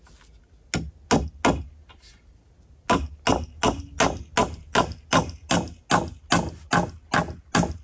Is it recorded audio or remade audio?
recorded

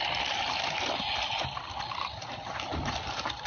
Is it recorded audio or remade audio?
remade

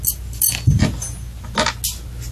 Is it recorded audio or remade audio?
recorded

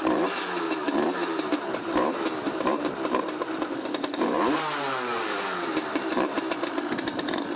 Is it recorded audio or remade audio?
remade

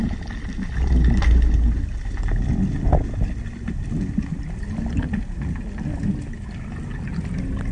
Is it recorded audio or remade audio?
recorded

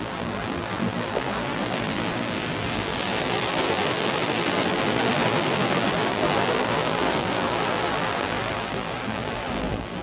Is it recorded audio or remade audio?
remade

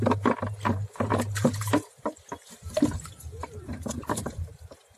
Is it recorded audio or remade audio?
remade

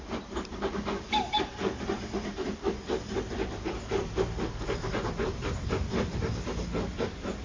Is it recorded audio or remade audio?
remade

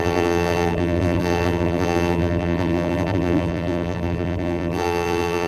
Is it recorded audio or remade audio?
remade